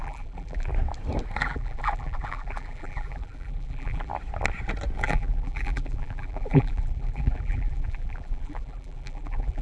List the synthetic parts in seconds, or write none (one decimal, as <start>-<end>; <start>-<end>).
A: 0.0-0.7; 1.4-4.1; 5.0-9.6